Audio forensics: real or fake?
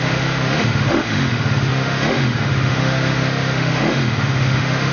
fake